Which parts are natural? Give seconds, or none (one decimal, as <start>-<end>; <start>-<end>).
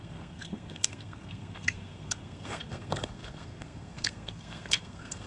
none